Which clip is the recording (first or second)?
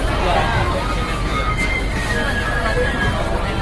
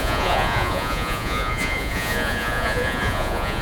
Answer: first